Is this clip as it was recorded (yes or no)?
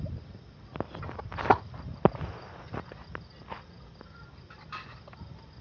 no